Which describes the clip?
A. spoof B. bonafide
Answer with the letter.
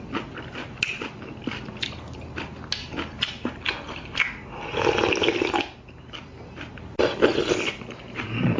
B